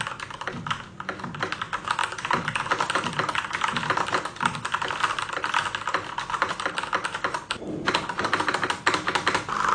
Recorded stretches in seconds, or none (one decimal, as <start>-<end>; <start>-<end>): 0.0-2.0; 6.7-9.7